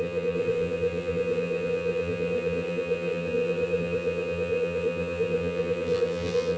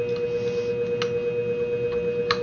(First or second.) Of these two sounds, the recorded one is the second